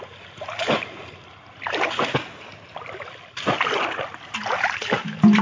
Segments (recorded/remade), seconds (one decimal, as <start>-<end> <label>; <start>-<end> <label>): 0.0-1.2 remade; 1.2-4.4 recorded; 4.4-5.4 remade